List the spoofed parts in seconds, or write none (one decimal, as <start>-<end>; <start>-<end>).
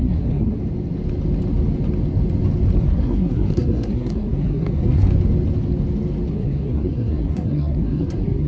0.0-0.6; 2.8-5.1; 6.3-8.5